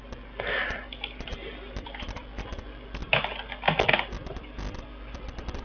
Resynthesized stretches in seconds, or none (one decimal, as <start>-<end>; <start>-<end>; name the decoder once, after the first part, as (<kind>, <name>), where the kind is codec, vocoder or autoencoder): none